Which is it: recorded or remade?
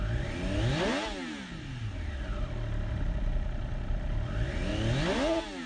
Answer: recorded